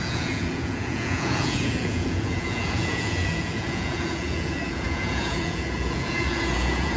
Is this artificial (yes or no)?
yes